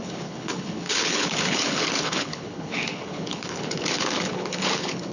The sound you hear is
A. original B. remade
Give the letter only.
B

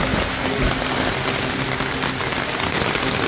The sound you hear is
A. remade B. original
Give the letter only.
B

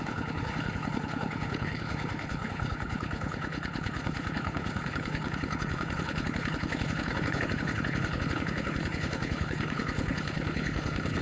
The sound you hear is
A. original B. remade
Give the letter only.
B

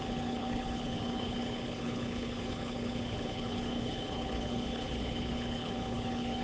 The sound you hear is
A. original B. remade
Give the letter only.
B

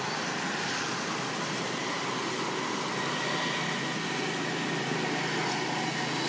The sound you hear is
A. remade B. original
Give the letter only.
B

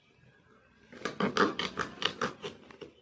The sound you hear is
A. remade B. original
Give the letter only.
B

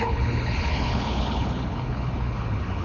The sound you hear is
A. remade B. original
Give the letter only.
A